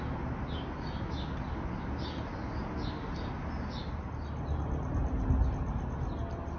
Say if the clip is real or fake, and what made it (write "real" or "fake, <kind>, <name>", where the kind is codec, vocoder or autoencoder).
real